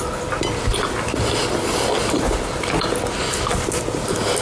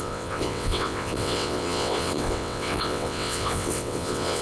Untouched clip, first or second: first